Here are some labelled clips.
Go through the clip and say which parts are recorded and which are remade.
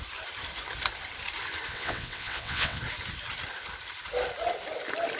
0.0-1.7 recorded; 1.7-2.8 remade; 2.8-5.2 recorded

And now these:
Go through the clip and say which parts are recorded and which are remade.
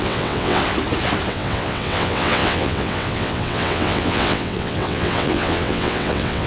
0.0-0.6 remade; 0.6-1.3 recorded; 1.3-6.5 remade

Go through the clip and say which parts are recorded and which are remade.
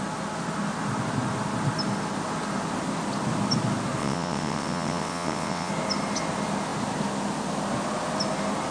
0.0-4.0 recorded; 4.0-5.7 remade; 5.7-8.7 recorded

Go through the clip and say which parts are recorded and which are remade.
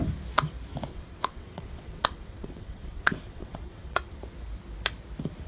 0.0-0.9 recorded; 0.9-4.2 remade; 4.2-5.5 recorded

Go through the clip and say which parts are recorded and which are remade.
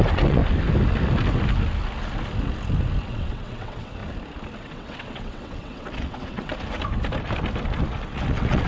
0.0-0.4 remade; 0.4-3.0 recorded; 3.0-4.0 remade; 4.0-4.6 recorded; 4.6-6.5 remade; 6.5-8.1 recorded; 8.1-8.7 remade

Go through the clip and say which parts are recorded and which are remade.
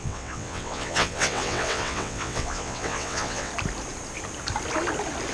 0.0-3.5 remade; 3.5-5.3 recorded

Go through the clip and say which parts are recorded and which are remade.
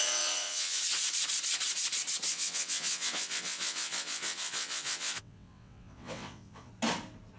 0.0-0.8 remade; 0.8-2.3 recorded; 2.3-6.7 remade; 6.7-7.4 recorded